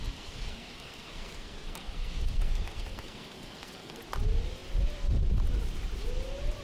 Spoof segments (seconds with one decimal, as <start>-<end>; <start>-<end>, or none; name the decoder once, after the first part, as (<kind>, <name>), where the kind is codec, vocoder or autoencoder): 0.0-4.0 (codec, SNAC)